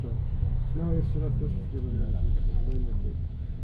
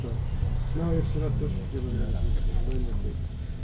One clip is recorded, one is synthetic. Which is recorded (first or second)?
second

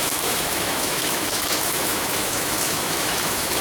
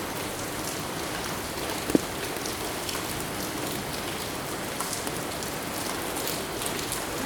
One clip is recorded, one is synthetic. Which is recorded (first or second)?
second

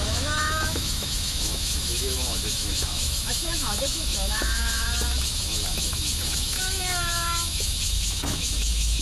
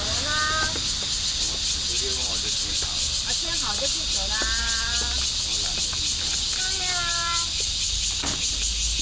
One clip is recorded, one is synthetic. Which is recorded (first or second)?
second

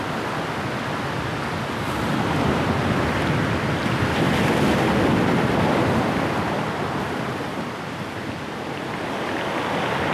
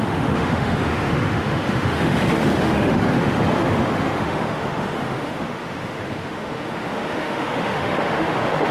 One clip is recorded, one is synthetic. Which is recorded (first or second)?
first